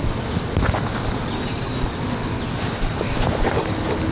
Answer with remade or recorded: recorded